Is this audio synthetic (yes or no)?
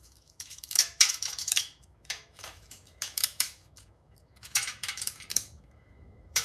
yes